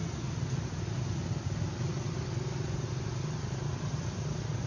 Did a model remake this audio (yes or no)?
no